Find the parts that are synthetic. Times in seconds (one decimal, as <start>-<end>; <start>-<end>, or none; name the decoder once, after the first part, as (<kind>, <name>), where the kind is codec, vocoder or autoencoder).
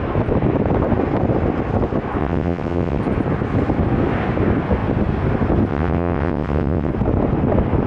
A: 2.2-3.0 (vocoder, WaveNeXt); 5.7-6.9